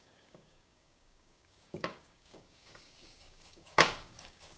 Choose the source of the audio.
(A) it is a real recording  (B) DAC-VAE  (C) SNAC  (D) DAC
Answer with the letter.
D